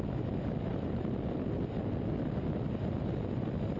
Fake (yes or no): no